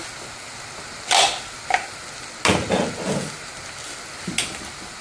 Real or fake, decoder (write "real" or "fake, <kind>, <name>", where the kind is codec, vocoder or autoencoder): real